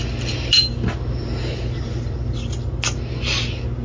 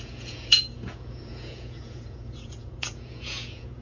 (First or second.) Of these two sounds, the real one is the first